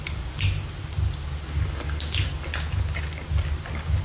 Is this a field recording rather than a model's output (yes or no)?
yes